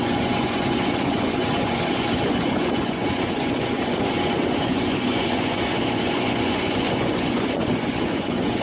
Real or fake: fake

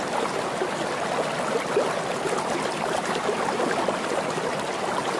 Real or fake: real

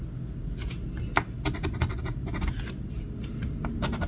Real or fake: real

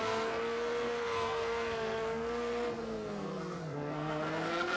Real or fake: fake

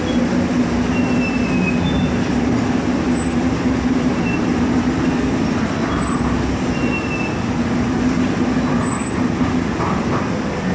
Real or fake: real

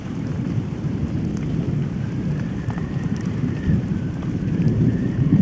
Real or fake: fake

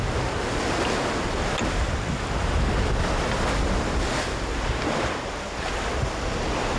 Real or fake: real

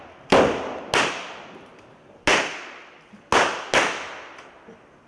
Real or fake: real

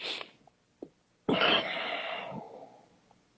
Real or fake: real